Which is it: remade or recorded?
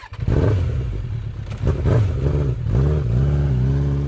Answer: recorded